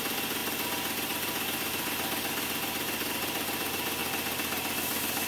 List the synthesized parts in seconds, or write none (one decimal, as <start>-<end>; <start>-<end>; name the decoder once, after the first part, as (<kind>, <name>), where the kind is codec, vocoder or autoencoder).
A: none